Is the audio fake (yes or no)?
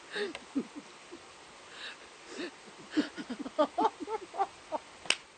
no